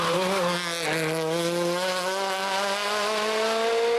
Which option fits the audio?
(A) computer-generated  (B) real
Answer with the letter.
B